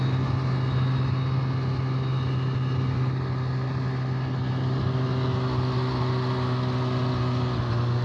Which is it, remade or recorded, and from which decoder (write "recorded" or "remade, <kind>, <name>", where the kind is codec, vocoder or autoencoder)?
recorded